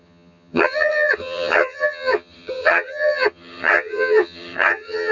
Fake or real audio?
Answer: fake